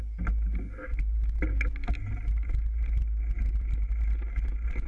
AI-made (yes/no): no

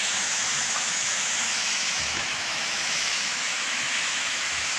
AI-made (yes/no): yes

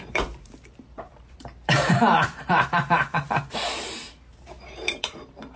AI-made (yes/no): yes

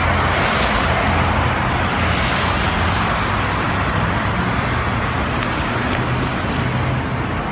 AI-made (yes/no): no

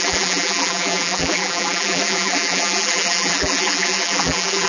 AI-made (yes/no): yes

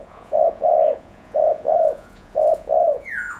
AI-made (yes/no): yes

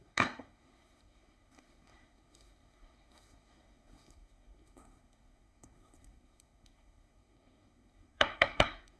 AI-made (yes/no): yes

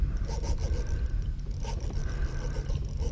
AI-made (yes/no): yes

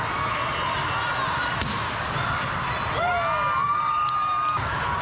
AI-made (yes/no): no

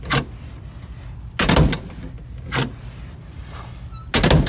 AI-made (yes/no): no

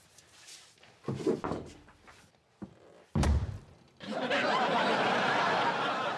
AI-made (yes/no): no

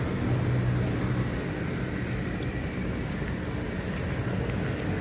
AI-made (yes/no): no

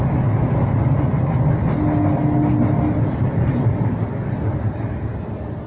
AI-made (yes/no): no